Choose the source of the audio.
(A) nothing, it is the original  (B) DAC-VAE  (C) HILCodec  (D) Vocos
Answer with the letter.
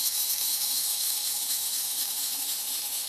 B